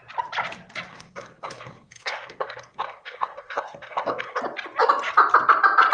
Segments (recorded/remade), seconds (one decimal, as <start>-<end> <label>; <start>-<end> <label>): 0.0-0.9 recorded; 0.9-4.4 remade; 4.4-5.9 recorded